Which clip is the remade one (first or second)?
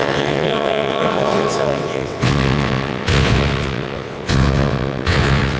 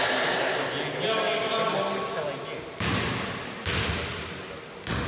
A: first